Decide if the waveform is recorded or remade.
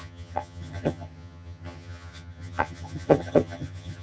remade